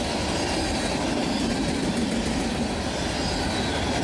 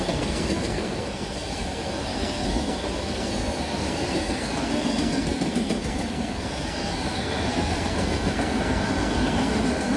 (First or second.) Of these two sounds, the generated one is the second